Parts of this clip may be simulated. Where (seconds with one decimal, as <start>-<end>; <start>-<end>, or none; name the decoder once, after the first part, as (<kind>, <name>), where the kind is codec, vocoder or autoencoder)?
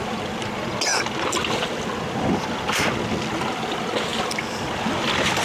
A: none